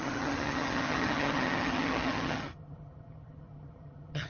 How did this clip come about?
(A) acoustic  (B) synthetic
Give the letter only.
B